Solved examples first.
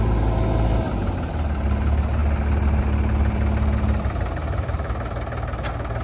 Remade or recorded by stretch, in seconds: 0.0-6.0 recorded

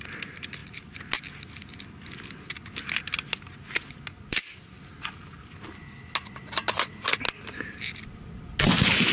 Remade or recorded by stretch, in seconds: 0.0-9.1 recorded

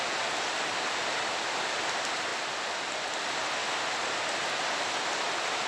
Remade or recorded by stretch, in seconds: 0.0-5.7 recorded

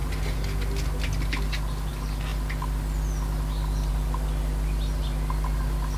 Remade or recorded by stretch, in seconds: 0.0-6.0 recorded

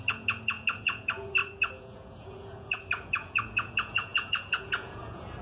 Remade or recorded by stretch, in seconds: 0.0-5.4 remade